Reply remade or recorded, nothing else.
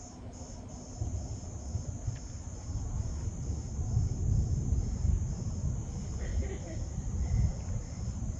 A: recorded